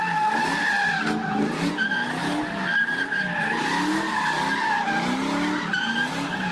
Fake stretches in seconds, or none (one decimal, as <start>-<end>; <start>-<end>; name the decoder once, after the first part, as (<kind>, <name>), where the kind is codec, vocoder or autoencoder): none